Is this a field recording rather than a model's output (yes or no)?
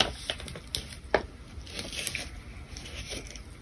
yes